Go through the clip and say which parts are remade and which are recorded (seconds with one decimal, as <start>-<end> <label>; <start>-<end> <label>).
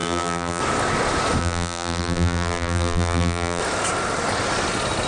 0.0-0.6 remade; 0.6-1.4 recorded; 1.4-3.6 remade; 3.6-5.1 recorded